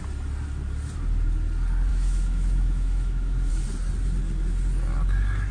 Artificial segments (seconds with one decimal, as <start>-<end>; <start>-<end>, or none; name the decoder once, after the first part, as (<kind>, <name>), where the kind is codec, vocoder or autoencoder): 1.9-3.5 (autoencoder, DAC-VAE)